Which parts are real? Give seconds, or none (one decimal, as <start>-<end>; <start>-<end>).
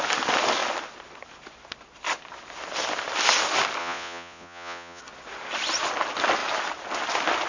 0.0-3.8; 5.0-7.5